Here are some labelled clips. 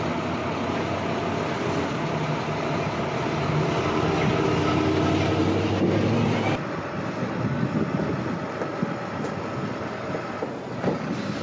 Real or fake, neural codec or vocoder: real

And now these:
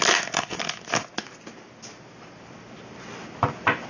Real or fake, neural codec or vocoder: real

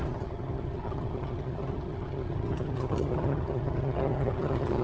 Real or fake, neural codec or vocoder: fake, vocoder, HiFi-GAN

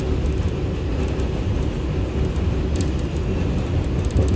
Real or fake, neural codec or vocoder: real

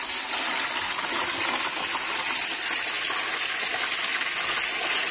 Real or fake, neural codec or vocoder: real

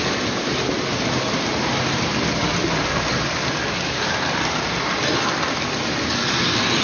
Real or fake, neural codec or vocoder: real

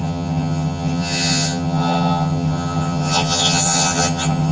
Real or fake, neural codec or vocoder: fake, vocoder, HiFi-GAN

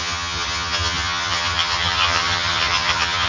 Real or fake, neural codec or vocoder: fake, vocoder, HiFi-GAN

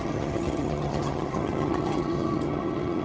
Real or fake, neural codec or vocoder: fake, vocoder, HiFi-GAN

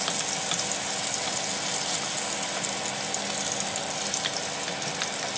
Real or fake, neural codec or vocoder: real